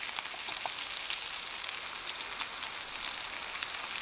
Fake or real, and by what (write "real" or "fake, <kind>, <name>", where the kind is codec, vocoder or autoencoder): real